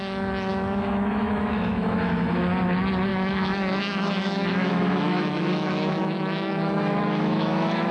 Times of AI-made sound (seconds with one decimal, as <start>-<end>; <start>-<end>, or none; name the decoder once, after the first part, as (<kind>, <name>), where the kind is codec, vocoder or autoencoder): 0.5-2.4 (autoencoder, DAC-VAE); 3.1-7.9